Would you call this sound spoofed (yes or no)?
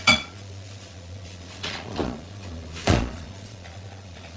yes